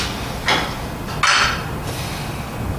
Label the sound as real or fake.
real